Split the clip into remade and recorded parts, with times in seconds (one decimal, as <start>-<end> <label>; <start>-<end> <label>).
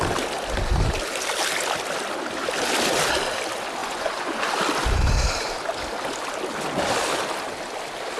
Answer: 0.0-3.8 recorded; 3.8-4.4 remade; 4.4-8.2 recorded